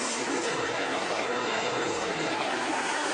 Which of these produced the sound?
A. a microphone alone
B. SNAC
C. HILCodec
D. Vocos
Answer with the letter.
B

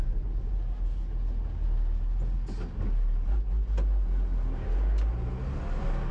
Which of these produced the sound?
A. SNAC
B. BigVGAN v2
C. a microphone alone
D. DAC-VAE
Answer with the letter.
C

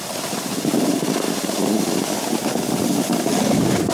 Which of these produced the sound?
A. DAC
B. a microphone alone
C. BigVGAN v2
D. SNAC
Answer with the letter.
B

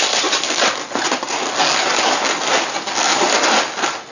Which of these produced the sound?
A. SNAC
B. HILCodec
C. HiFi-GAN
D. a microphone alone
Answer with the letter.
D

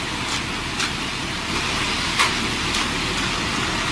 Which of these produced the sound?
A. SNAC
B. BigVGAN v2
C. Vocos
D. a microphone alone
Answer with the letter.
D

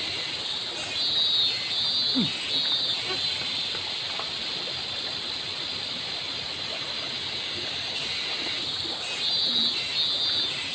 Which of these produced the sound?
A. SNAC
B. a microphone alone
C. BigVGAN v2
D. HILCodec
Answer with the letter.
B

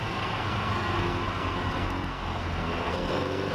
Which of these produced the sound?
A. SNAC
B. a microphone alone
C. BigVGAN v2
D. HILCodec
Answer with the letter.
A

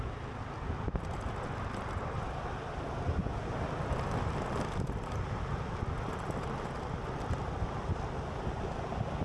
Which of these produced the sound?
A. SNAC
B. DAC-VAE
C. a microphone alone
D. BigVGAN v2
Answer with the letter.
C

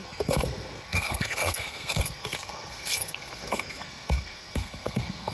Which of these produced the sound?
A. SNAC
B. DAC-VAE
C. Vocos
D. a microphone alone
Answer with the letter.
A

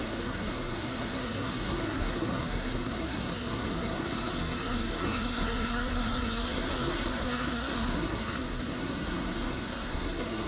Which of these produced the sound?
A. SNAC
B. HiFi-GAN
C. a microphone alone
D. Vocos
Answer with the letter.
A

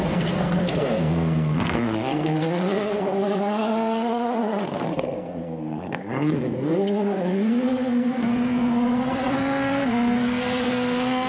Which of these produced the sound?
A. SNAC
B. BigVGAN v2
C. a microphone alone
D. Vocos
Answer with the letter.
A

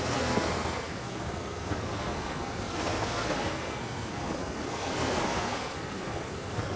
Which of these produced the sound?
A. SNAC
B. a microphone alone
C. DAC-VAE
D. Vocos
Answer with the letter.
A